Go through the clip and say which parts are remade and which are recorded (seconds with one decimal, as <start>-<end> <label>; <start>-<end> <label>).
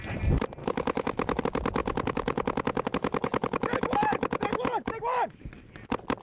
0.0-0.6 recorded; 0.6-1.4 remade; 1.4-1.8 recorded; 1.8-5.5 remade; 5.5-6.2 recorded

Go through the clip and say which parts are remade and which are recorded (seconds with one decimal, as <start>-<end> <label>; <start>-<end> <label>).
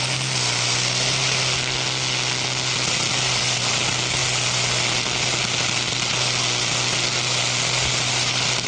0.0-8.7 recorded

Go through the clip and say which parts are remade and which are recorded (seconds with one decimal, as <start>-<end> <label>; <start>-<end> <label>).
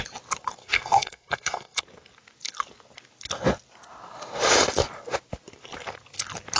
0.0-0.6 recorded; 0.6-1.8 remade; 1.8-6.6 recorded